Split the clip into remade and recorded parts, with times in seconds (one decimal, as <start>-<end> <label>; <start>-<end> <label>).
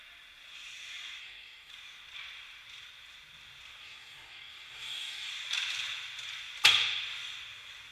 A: 0.0-1.2 recorded; 1.2-1.7 remade; 1.7-3.8 recorded; 3.8-5.3 remade; 5.3-7.9 recorded